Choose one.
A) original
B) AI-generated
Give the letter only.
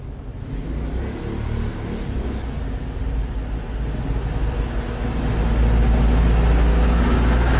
A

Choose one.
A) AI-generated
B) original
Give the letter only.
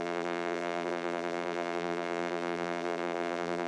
A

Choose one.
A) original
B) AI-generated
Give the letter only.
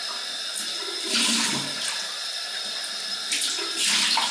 A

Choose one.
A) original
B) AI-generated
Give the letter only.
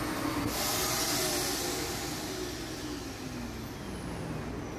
A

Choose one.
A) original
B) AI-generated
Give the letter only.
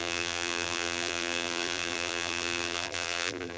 B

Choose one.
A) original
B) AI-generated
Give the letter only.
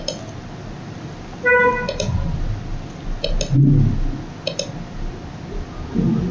A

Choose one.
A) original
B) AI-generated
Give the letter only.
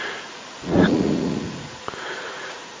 B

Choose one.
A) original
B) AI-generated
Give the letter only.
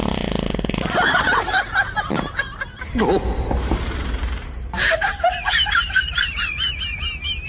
B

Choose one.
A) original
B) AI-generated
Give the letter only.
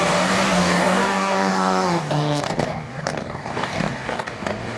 B